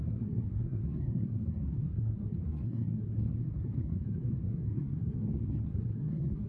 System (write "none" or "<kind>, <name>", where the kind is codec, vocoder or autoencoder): codec, SNAC